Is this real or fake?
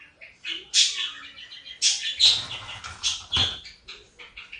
real